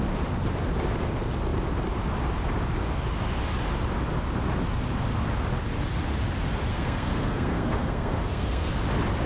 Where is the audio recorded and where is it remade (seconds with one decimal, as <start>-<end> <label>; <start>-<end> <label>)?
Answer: 0.0-6.7 recorded; 6.7-8.7 remade; 8.7-9.3 recorded